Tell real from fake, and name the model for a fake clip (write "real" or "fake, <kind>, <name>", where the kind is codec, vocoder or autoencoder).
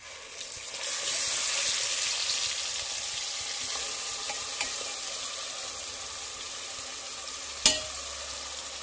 real